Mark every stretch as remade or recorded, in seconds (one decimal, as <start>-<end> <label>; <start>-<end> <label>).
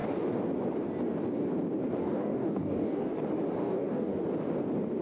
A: 0.0-2.0 recorded; 2.0-3.2 remade; 3.2-3.6 recorded; 3.6-4.2 remade; 4.2-5.0 recorded